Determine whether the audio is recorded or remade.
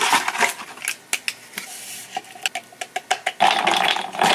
recorded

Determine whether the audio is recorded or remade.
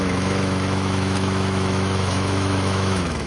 remade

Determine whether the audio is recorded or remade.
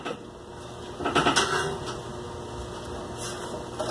recorded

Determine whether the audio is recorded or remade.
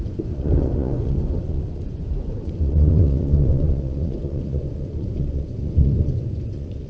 remade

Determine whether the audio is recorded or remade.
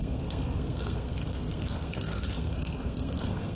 remade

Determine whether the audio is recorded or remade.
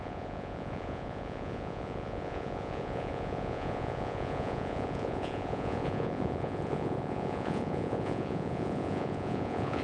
remade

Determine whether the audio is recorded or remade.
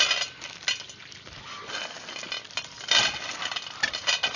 recorded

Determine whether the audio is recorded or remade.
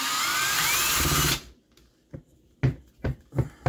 recorded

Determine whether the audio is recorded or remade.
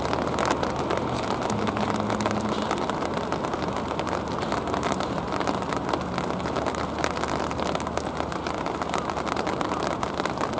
recorded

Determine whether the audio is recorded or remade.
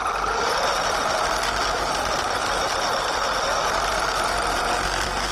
remade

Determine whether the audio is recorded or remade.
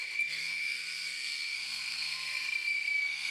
remade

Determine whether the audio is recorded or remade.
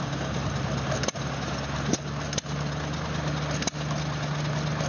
recorded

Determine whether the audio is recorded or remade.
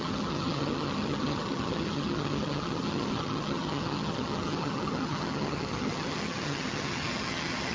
remade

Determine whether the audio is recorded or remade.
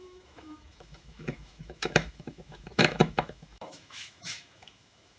remade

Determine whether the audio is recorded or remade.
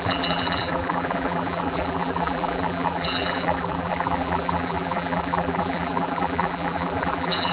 remade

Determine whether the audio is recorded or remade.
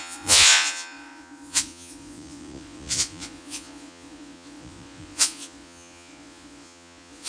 remade